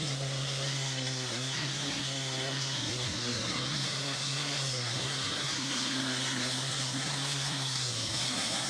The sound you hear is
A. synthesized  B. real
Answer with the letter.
A